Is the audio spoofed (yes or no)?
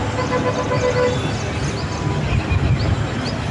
no